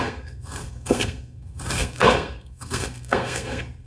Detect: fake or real fake